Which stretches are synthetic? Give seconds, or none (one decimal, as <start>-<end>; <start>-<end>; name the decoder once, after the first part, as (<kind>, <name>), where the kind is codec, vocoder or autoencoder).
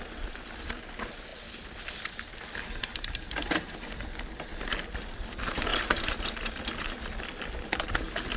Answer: none